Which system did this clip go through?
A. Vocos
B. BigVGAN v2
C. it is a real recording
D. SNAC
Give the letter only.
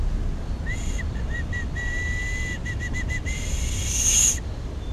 C